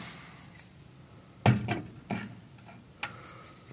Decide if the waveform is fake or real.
real